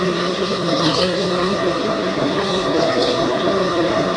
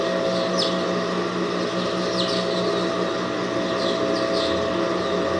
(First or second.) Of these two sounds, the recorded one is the second